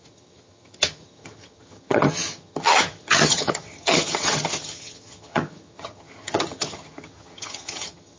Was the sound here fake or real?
fake